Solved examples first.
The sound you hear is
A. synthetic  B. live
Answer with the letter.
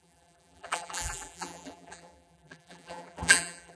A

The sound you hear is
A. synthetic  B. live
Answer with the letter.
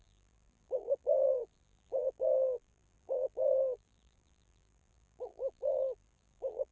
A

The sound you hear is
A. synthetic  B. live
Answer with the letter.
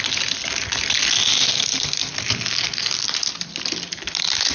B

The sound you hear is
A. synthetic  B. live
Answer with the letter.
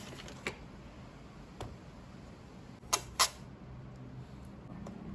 B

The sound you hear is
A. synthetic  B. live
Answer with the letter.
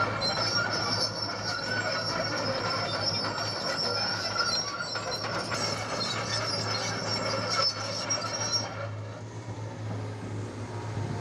B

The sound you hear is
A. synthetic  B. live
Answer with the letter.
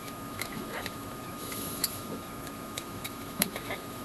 A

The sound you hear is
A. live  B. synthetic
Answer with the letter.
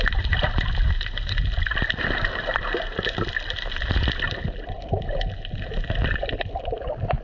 B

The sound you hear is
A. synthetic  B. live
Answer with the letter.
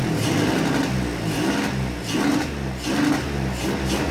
B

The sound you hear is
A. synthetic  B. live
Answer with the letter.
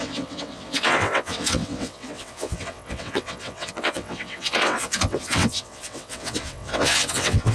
A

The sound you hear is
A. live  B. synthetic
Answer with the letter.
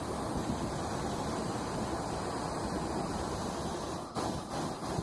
A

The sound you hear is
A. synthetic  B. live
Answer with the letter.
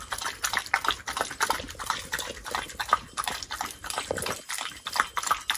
A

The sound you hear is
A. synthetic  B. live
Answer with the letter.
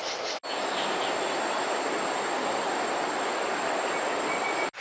B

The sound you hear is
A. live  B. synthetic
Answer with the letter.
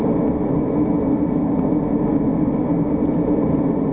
A